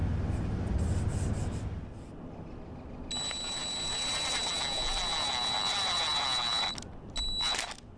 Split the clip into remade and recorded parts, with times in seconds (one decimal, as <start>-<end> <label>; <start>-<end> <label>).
0.0-8.0 recorded